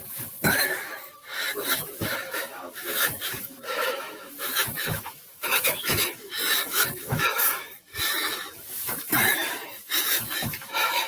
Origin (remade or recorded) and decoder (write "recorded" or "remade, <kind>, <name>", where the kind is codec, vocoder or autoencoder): remade, autoencoder, DAC-VAE